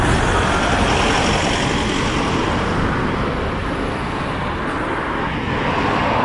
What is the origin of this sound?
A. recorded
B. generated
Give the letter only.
A